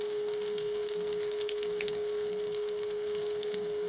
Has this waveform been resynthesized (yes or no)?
yes